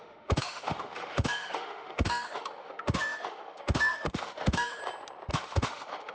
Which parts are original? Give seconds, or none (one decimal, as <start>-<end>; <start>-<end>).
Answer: 4.8-5.3